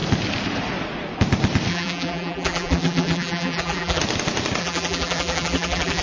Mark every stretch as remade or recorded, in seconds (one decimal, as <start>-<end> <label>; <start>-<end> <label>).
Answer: 0.0-1.7 recorded; 1.7-4.0 remade; 4.0-4.6 recorded; 4.6-6.0 remade